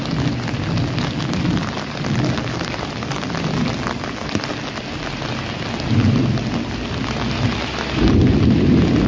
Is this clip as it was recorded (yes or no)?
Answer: yes